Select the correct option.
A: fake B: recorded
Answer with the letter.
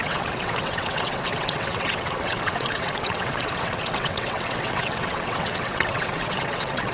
A